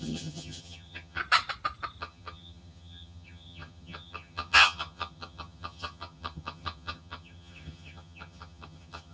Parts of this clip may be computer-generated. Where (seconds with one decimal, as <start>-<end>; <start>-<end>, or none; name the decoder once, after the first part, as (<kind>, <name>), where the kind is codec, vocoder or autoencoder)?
0.0-1.2 (vocoder, HiFi-GAN); 2.0-9.1